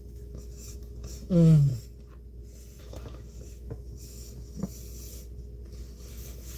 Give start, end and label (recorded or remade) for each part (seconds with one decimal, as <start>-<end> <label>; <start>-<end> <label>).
0.0-1.7 remade; 1.7-2.8 recorded; 2.8-4.6 remade; 4.6-6.1 recorded; 6.1-6.6 remade